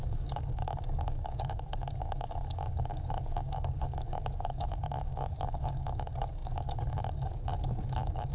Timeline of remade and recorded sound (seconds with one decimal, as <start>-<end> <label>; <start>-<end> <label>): 0.0-8.3 remade